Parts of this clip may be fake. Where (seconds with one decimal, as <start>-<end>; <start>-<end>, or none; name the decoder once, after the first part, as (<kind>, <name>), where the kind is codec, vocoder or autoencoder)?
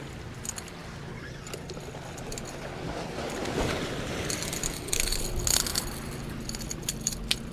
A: 0.8-1.3 (vocoder, BigVGAN v2); 3.4-4.2; 5.7-6.9